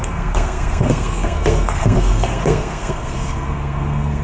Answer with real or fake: fake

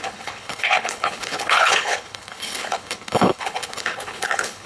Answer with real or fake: fake